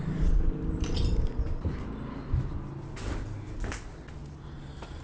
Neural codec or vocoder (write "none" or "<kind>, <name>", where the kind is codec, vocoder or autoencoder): none